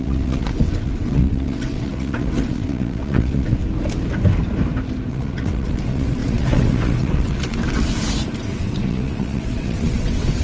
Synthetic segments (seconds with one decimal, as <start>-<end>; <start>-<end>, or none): 0.0-3.6; 5.1-7.9; 8.4-10.4